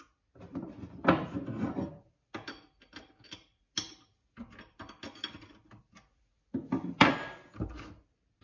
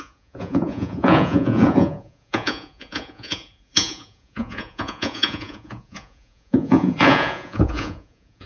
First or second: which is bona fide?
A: first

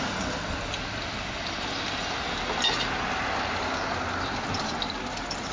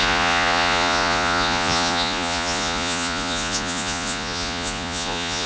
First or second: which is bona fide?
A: first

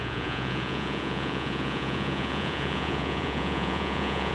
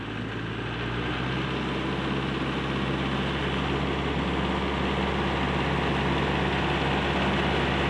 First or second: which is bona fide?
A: second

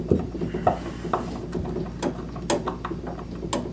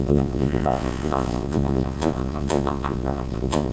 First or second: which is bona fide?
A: first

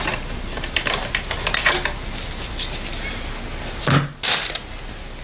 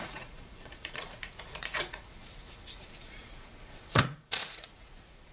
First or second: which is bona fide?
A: first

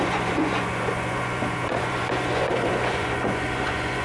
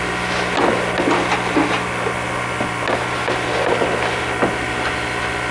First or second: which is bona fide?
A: second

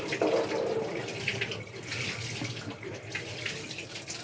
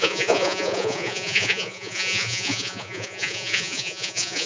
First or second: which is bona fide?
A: first